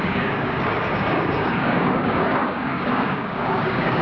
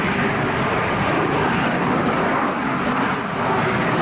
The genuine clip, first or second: second